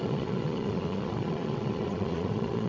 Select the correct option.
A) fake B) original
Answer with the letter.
A